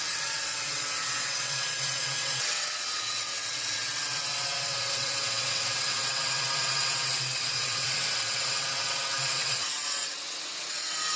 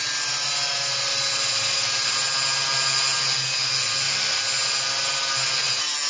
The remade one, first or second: first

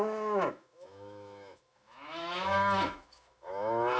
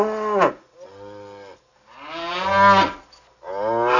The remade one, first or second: first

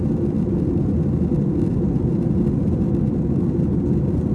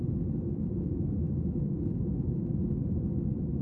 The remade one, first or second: second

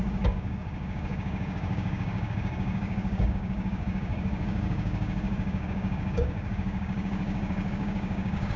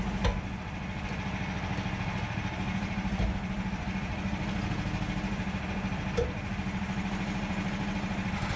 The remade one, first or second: first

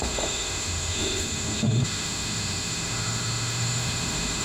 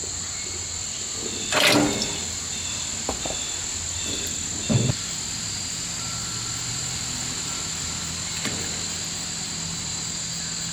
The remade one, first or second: first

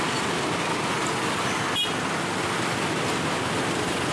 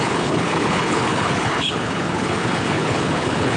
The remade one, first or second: second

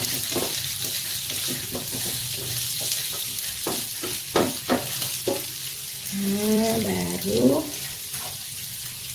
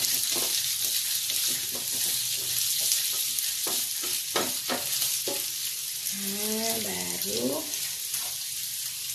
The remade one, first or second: first